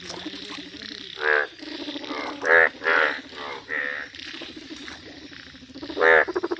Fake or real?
real